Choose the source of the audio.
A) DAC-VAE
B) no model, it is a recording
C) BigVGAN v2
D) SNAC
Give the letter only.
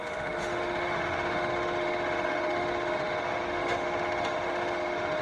A